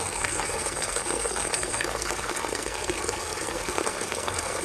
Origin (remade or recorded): remade